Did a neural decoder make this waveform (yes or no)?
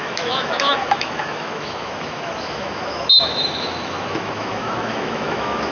yes